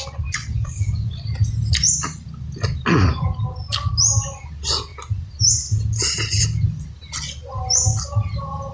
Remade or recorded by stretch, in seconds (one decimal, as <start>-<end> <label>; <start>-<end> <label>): 0.0-0.5 recorded; 0.5-1.1 remade; 1.1-8.7 recorded